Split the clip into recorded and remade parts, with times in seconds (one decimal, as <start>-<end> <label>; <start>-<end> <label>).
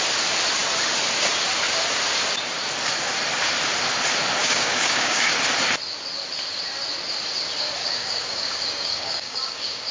0.0-4.4 recorded; 4.4-5.3 remade; 5.3-7.8 recorded; 7.8-9.9 remade